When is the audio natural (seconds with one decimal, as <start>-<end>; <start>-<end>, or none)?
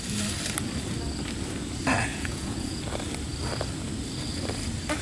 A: 0.0-2.1; 2.8-5.0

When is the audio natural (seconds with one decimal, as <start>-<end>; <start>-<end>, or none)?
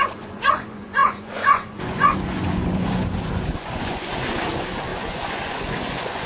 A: none